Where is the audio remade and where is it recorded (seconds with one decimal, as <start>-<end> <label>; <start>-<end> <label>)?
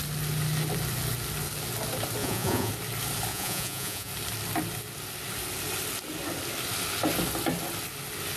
0.0-2.2 recorded; 2.2-2.7 remade; 2.7-3.3 recorded; 3.3-4.1 remade; 4.1-8.4 recorded